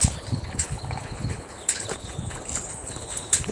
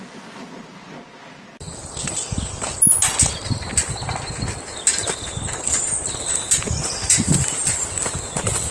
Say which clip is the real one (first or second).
second